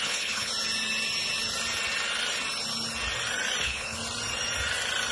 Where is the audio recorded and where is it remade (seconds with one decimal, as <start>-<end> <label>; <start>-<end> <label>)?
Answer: 0.0-0.5 remade; 0.5-3.6 recorded; 3.6-4.0 remade; 4.0-5.1 recorded

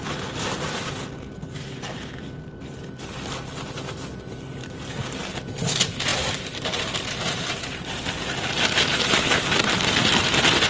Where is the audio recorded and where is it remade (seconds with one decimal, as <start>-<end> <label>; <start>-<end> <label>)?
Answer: 0.0-10.7 recorded

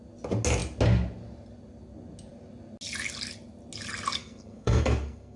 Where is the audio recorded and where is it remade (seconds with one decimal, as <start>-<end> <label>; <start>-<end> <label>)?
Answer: 0.0-4.2 recorded; 4.2-5.4 remade

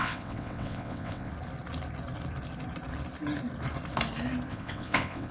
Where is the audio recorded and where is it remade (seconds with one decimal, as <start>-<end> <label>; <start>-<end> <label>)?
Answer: 0.0-1.3 remade; 1.3-4.5 recorded; 4.5-5.3 remade

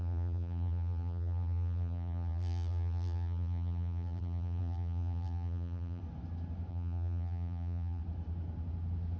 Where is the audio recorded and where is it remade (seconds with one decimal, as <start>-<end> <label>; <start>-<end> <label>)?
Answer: 0.0-6.0 remade; 6.0-6.7 recorded; 6.7-8.0 remade; 8.0-9.2 recorded

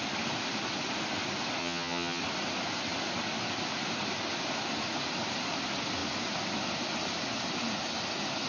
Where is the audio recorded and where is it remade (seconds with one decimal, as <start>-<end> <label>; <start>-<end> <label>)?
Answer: 0.0-1.6 recorded; 1.6-2.2 remade; 2.2-8.5 recorded